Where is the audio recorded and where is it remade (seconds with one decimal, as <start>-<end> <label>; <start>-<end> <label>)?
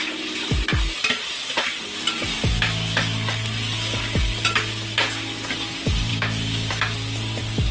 0.0-6.1 recorded; 6.1-6.7 remade; 6.7-7.7 recorded